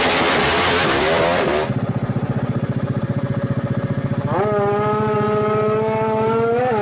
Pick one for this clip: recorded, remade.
recorded